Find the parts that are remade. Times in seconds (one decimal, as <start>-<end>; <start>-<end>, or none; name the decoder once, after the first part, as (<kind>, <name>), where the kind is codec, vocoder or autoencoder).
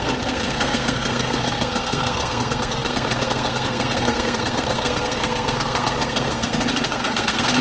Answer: 0.0-7.6 (codec, SNAC)